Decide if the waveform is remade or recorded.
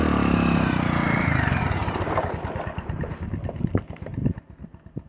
recorded